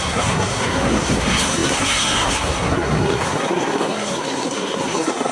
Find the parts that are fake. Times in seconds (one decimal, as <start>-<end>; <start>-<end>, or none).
0.0-5.3